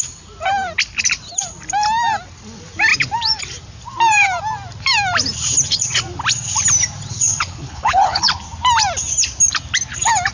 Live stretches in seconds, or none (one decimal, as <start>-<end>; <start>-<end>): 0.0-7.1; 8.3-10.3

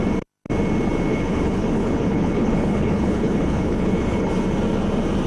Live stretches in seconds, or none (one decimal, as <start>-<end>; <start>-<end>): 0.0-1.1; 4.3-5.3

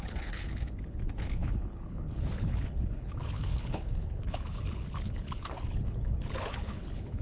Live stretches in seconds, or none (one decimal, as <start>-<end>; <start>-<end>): none

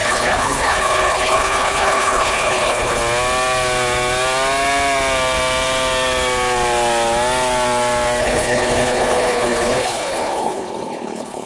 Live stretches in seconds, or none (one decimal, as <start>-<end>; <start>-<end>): 3.0-8.2